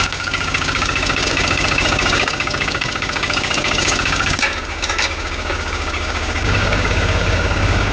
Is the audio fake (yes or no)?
yes